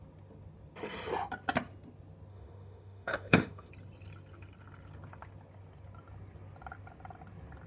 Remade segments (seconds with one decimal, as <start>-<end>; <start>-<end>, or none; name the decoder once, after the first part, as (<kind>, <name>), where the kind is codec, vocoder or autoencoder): 2.3-3.7 (autoencoder, DAC-VAE)